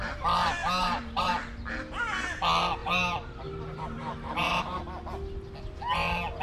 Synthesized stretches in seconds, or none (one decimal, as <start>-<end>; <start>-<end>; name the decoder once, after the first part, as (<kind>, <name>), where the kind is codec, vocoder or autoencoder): 0.6-1.3 (vocoder, BigVGAN v2); 2.8-4.8